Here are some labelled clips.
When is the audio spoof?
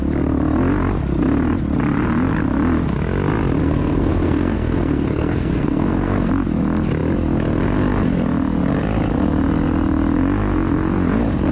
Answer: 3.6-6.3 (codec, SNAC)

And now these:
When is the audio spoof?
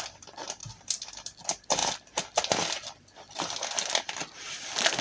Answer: 0.0-0.6 (vocoder, BigVGAN v2); 1.4-5.0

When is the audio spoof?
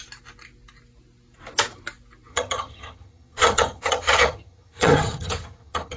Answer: 2.3-6.0 (vocoder, HiFi-GAN)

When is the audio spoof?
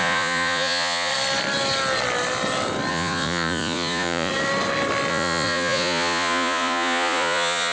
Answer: 0.0-1.1 (vocoder, Vocos); 2.9-4.3; 5.1-7.7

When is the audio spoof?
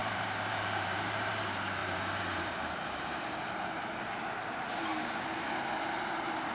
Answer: 0.0-1.3 (vocoder, BigVGAN v2); 1.8-3.7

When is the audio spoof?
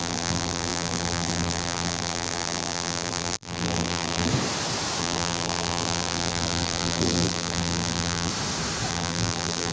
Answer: 0.0-4.3 (vocoder, BigVGAN v2); 5.0-8.3; 8.9-9.7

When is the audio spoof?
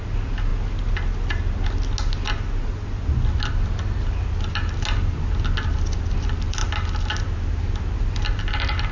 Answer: none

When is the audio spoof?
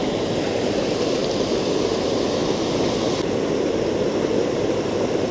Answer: none